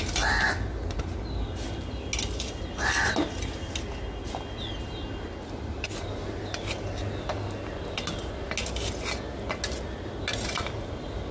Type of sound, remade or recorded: recorded